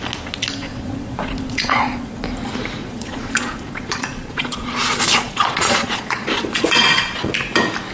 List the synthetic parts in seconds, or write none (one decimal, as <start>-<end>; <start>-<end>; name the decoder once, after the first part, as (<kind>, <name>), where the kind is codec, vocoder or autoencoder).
0.6-2.1 (vocoder, Vocos); 2.8-7.3